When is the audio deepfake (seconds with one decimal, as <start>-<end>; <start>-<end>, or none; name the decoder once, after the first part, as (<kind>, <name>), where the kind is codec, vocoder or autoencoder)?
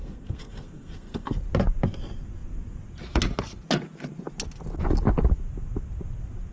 0.0-1.4 (codec, SNAC)